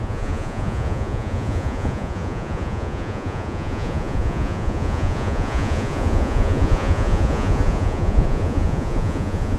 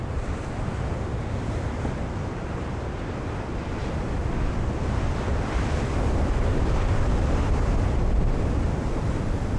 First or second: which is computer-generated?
first